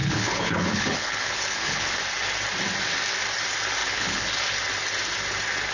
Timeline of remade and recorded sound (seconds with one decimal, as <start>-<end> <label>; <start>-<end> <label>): 0.0-1.9 remade; 1.9-3.8 recorded; 3.8-4.3 remade; 4.3-5.7 recorded

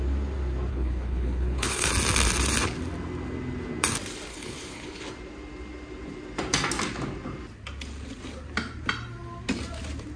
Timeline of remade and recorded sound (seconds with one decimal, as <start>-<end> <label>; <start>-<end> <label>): 0.0-0.7 recorded; 0.7-1.9 remade; 1.9-4.3 recorded; 4.3-5.0 remade; 5.0-10.2 recorded

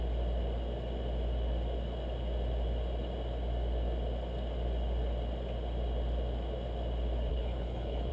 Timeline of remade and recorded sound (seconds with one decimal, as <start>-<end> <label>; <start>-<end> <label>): 0.0-7.3 recorded; 7.3-8.1 remade

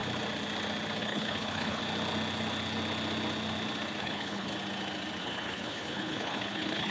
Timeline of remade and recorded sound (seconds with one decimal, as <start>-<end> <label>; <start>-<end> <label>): 0.0-1.0 recorded; 1.0-1.8 remade; 1.8-4.0 recorded; 4.0-4.5 remade; 4.5-5.2 recorded; 5.2-6.9 remade

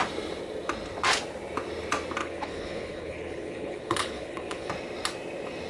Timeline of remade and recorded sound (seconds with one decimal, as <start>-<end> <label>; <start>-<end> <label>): 0.0-2.2 recorded; 2.2-4.7 remade; 4.7-5.7 recorded

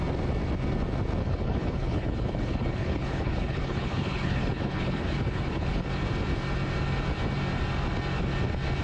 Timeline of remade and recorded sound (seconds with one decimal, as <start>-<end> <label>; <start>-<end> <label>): 0.0-1.2 recorded; 1.2-5.9 remade; 5.9-8.8 recorded

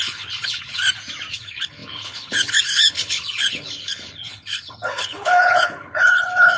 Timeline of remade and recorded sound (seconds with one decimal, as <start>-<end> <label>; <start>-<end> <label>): 0.0-0.8 remade; 0.8-1.3 recorded; 1.3-6.6 remade

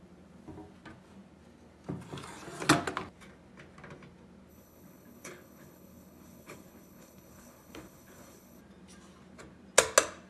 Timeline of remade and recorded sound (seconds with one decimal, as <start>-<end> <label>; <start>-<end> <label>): 0.0-4.5 recorded; 4.5-8.6 remade; 8.6-10.3 recorded